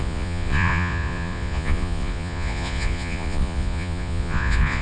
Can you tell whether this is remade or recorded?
remade